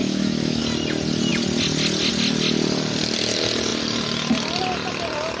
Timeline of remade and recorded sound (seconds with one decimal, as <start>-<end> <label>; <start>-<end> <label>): 0.0-0.6 remade; 0.6-5.4 recorded